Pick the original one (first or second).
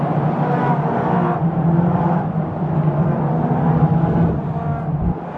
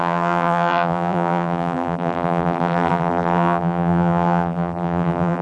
first